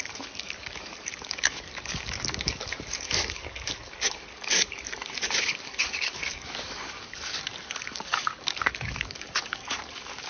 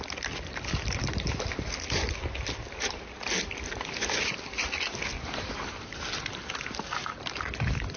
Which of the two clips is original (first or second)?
second